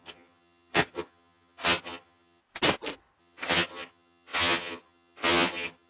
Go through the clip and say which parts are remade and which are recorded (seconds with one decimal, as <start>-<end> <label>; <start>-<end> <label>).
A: 0.0-2.4 remade; 2.4-3.2 recorded; 3.2-5.9 remade